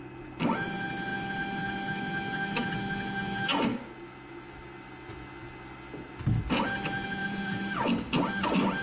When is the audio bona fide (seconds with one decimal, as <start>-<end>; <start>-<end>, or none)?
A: 0.0-7.2; 8.3-8.8